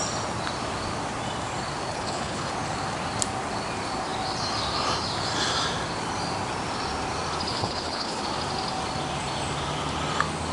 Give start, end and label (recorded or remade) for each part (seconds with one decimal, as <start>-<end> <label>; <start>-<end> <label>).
0.0-1.9 recorded; 1.9-2.5 remade; 2.5-7.5 recorded; 7.5-8.2 remade; 8.2-10.5 recorded